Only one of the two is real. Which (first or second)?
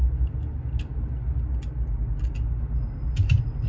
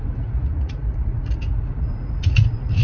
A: first